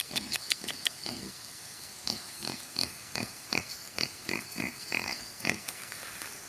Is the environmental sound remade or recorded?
remade